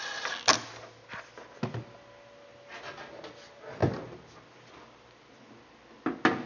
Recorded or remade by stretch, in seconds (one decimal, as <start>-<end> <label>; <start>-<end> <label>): 0.0-6.5 recorded